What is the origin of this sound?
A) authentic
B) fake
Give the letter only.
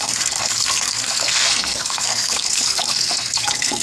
B